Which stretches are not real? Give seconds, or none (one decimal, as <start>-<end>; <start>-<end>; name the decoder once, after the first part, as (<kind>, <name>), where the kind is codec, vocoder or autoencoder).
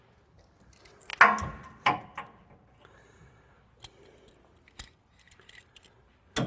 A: none